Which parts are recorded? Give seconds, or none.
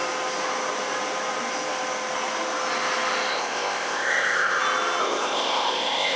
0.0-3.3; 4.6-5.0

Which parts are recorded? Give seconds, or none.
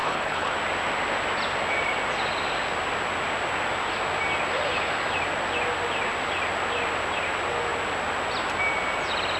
0.5-9.4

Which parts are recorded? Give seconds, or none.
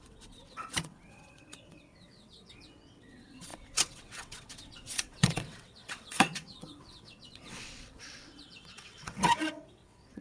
none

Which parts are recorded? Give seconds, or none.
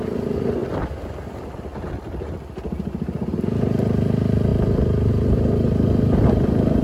0.0-6.8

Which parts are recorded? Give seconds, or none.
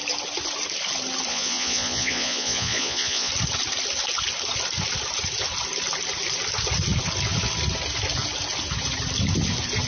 0.0-1.3; 3.3-9.9